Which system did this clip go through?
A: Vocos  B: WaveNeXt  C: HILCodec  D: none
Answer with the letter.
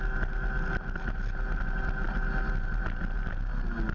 D